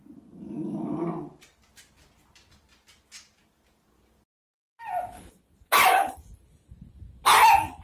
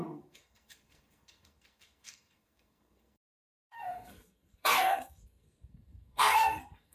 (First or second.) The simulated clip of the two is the second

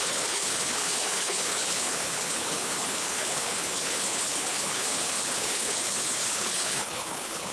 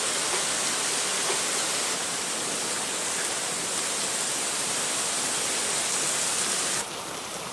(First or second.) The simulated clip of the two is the first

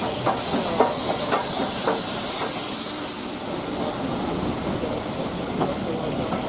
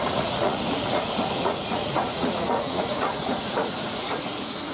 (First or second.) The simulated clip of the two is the second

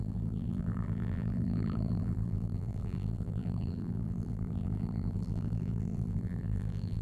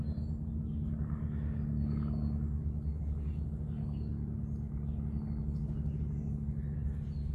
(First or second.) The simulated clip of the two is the first